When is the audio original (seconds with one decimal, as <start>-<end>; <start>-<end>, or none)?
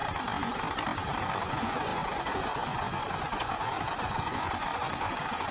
0.0-1.2